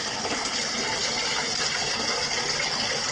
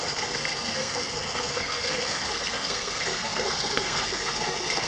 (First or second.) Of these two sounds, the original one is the first